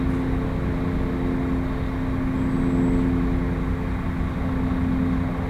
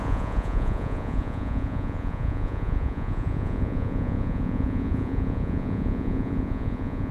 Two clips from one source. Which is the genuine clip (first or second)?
first